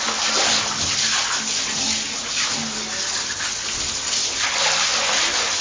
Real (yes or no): yes